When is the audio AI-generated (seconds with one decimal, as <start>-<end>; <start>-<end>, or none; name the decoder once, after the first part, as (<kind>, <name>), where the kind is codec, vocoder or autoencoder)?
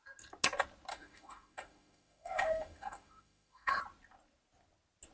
0.9-3.8 (autoencoder, DAC-VAE)